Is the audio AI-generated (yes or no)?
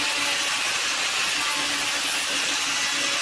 no